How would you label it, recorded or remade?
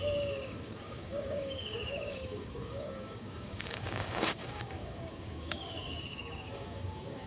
remade